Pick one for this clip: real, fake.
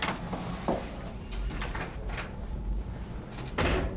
real